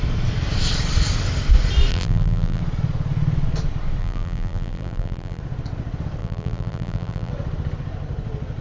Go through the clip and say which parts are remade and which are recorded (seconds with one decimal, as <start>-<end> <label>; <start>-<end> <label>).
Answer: 0.0-1.9 recorded; 1.9-2.6 remade; 2.6-4.0 recorded; 4.0-5.4 remade; 5.4-6.2 recorded; 6.2-7.3 remade; 7.3-8.6 recorded